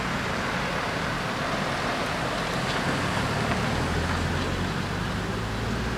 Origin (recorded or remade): recorded